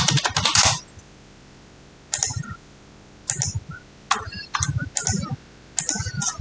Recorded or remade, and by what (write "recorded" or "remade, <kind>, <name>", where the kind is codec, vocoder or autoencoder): recorded